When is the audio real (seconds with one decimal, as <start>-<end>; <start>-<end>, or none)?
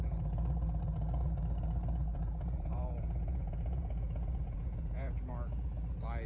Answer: 0.0-2.1; 5.3-6.3